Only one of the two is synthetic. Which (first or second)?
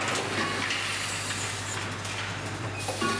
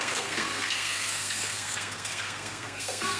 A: second